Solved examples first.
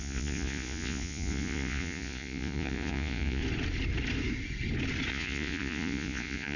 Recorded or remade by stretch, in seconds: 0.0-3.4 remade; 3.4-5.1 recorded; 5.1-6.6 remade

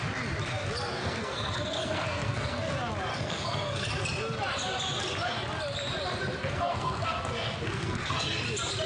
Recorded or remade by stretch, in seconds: 0.0-1.0 recorded; 1.0-2.7 remade; 2.7-3.1 recorded; 3.1-3.9 remade; 3.9-6.4 recorded; 6.4-8.4 remade; 8.4-8.9 recorded

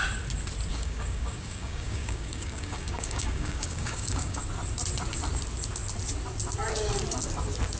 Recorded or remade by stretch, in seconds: 0.0-0.7 recorded; 0.7-4.4 remade; 4.4-7.8 recorded

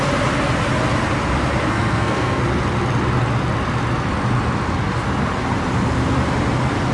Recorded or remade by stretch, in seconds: 0.0-1.7 recorded; 1.7-2.4 remade; 2.4-6.9 recorded